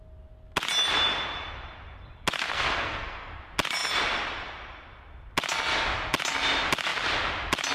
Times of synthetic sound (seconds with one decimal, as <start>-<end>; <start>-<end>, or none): 2.5-3.4